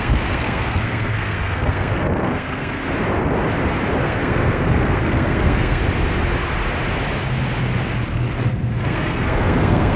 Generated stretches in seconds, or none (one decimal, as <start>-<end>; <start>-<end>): 0.0-2.8; 4.0-5.8; 8.1-10.0

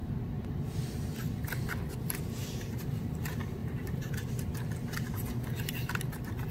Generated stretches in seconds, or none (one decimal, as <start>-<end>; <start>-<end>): 2.4-3.2; 3.6-4.2

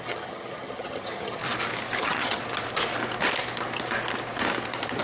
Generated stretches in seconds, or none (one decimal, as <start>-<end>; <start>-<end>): 0.0-1.4; 2.0-2.4

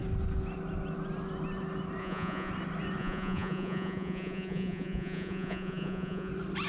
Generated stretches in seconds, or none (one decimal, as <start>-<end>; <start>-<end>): 2.0-2.5; 3.0-6.3

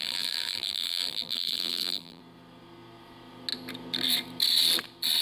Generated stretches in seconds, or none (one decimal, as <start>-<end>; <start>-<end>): 0.0-2.2

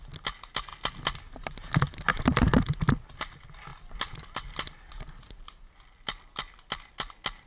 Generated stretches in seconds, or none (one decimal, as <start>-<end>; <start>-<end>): 3.7-7.1

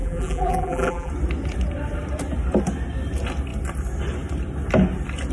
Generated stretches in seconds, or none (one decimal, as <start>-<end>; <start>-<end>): 0.0-1.1

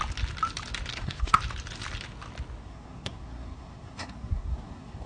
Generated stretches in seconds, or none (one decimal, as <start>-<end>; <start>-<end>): 0.9-1.4; 2.6-5.1